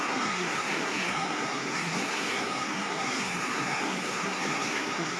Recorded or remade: remade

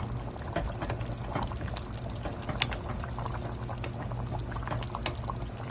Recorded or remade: recorded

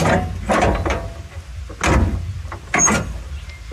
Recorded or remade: recorded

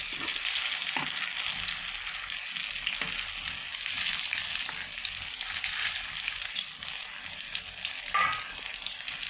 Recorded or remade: recorded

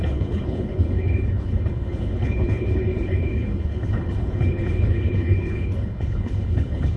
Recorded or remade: remade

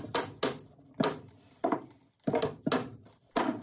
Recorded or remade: recorded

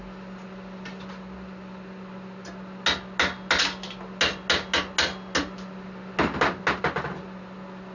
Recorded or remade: recorded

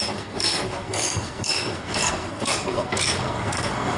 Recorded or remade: remade